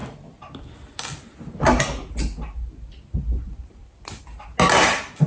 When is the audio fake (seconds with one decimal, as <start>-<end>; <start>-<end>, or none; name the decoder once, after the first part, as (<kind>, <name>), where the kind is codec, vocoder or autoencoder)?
3.2-3.8 (vocoder, BigVGAN v2); 4.8-5.3

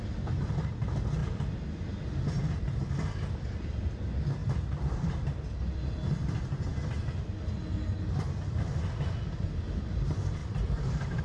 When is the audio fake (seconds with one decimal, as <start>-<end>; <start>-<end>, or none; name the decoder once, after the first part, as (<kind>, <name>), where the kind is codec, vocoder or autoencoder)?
4.4-5.6 (vocoder, BigVGAN v2); 10.4-11.2

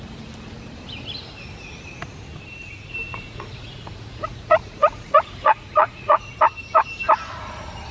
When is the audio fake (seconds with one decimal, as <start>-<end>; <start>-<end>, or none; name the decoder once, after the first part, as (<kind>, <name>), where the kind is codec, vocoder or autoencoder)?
3.1-6.3 (vocoder, Vocos)

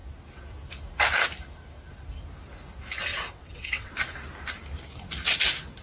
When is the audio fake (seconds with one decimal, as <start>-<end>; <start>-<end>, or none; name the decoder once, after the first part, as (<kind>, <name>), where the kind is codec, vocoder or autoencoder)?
3.1-3.9 (vocoder, WaveNeXt)

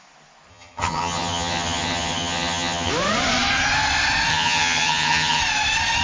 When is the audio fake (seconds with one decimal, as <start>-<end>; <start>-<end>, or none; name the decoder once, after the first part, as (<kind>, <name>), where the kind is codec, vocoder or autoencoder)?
0.5-2.9 (vocoder, HiFi-GAN); 4.3-5.4

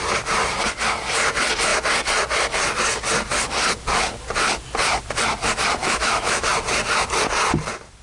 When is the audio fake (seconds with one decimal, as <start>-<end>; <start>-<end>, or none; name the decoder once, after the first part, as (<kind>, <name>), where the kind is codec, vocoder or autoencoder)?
5.8-6.5 (autoencoder, DAC-VAE)

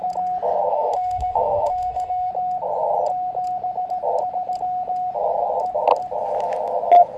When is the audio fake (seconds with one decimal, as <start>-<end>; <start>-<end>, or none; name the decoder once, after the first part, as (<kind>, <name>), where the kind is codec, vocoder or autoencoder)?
0.7-2.3 (autoencoder, DAC-VAE)

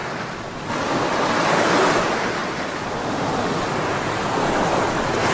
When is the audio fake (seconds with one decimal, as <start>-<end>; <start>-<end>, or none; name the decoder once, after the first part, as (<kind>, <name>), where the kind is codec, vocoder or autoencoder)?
none